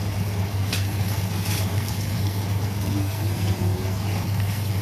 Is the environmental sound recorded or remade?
remade